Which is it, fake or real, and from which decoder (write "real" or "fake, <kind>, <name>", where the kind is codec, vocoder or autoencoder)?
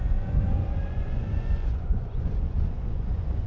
fake, vocoder, Vocos